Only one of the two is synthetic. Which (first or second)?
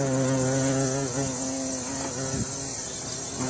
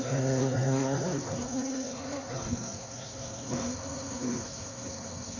second